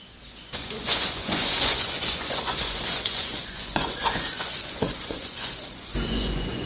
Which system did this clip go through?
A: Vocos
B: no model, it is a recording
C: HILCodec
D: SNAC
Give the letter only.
A